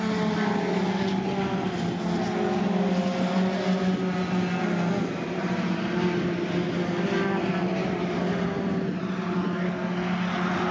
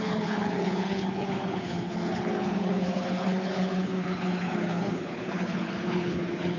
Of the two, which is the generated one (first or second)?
second